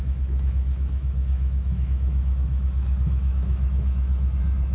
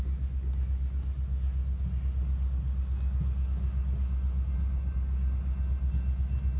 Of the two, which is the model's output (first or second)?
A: first